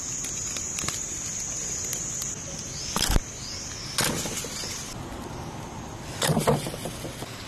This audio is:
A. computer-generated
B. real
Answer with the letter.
B